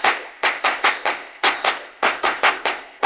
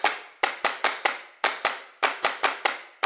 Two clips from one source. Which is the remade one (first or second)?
first